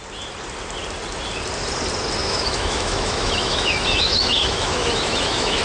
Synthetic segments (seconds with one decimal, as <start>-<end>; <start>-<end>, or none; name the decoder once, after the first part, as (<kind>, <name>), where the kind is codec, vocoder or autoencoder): 2.2-5.6 (autoencoder, DAC-VAE)